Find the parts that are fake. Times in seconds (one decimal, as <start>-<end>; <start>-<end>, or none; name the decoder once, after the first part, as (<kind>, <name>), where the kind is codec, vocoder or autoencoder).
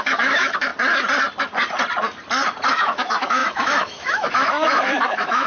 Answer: 0.0-0.7 (autoencoder, DAC-VAE); 2.7-5.5